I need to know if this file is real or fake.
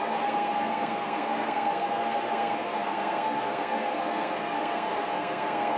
fake